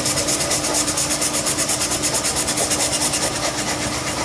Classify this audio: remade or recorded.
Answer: recorded